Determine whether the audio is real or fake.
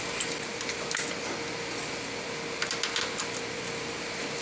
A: real